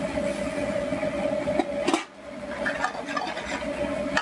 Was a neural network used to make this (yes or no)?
no